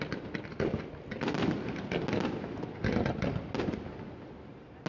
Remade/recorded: recorded